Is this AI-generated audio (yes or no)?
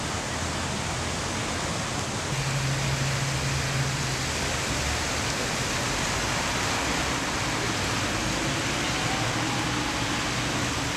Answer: no